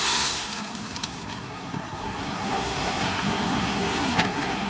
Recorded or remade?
remade